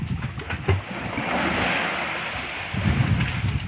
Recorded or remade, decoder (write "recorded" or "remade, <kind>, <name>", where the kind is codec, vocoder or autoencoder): recorded